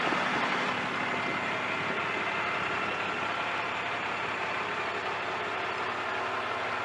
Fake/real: real